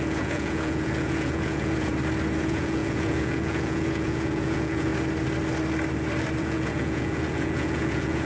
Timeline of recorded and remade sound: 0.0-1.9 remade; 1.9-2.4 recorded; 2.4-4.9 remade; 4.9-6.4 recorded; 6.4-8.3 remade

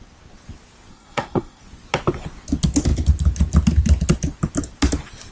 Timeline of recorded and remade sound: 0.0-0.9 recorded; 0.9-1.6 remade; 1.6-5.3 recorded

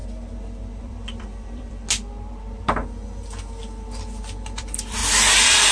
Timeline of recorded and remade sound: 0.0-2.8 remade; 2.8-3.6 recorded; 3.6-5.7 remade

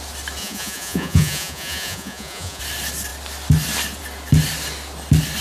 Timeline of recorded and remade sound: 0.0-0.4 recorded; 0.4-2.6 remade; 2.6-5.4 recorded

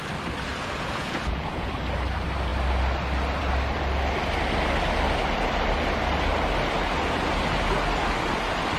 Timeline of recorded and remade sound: 0.0-0.5 recorded; 0.5-1.7 remade; 1.7-8.8 recorded

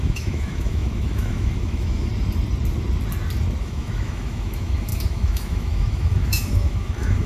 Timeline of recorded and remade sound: 0.0-2.1 remade; 2.1-3.6 recorded; 3.6-7.3 remade

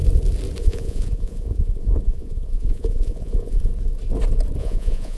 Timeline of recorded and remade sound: 0.0-0.6 recorded; 0.6-3.7 remade; 3.7-4.6 recorded; 4.6-5.2 remade

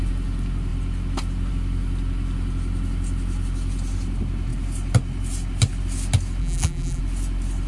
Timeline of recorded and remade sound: 0.0-6.4 recorded; 6.4-7.0 remade; 7.0-7.7 recorded